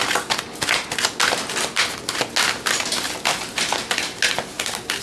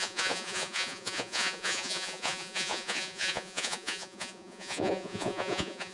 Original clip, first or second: first